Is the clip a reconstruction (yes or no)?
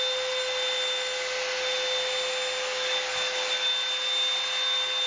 no